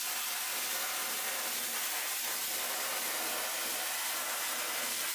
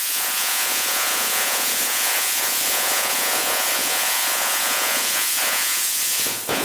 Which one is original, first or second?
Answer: first